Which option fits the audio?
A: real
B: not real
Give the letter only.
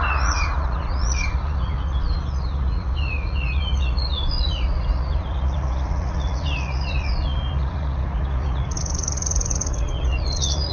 B